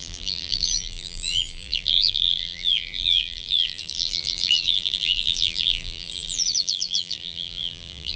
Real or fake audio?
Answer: fake